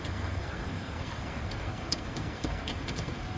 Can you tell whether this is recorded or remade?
remade